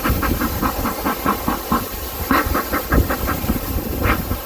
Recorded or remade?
remade